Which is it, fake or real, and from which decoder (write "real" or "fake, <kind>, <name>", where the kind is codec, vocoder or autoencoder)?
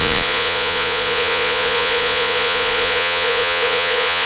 fake, vocoder, Vocos